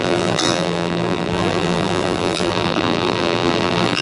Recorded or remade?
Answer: remade